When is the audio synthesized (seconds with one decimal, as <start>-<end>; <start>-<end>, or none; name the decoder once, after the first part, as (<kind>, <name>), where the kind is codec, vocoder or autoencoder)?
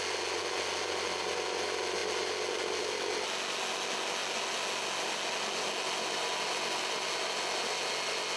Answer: none